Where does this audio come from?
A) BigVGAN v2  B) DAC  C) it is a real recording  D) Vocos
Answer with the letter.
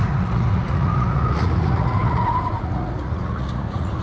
D